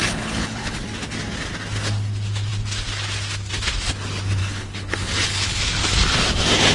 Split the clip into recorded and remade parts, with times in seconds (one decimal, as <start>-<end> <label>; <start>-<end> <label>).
0.0-0.8 remade; 0.8-4.4 recorded; 4.4-5.6 remade; 5.6-6.7 recorded

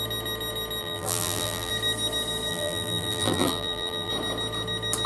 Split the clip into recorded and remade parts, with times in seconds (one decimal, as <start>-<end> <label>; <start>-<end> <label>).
0.0-0.8 recorded; 0.8-1.7 remade; 1.7-2.5 recorded; 2.5-4.1 remade; 4.1-5.1 recorded